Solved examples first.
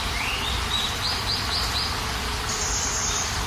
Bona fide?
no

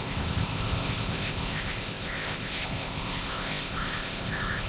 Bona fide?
no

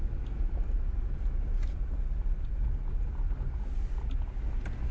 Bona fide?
yes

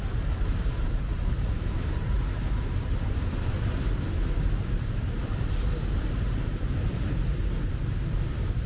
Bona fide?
no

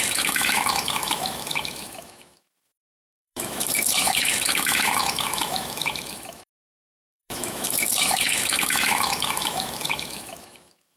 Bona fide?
no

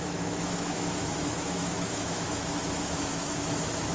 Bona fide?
no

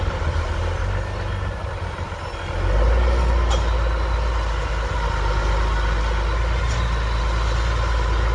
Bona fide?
yes